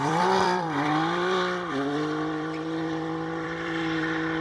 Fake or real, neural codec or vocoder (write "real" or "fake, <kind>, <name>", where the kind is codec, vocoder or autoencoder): fake, vocoder, BigVGAN v2